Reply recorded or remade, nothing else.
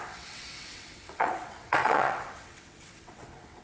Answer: remade